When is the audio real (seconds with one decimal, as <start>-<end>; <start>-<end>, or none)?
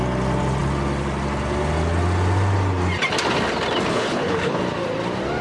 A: 0.0-3.9; 4.6-5.4